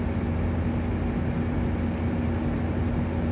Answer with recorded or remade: recorded